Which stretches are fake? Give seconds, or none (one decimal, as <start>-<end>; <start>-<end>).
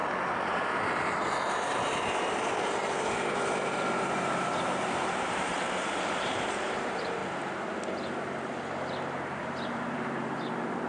0.0-7.2; 9.2-10.9